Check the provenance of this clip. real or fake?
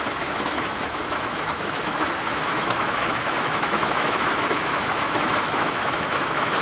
fake